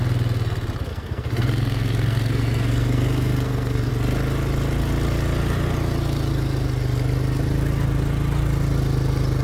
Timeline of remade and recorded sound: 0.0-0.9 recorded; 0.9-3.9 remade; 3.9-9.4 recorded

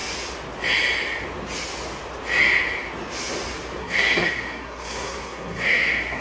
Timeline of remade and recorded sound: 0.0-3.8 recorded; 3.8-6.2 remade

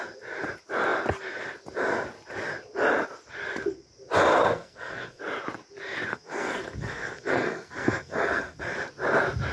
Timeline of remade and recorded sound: 0.0-4.3 recorded; 4.3-5.2 remade; 5.2-6.1 recorded; 6.1-8.6 remade; 8.6-9.5 recorded

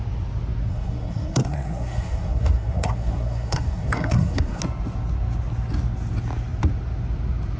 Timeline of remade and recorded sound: 0.0-0.7 recorded; 0.7-4.6 remade; 4.6-7.6 recorded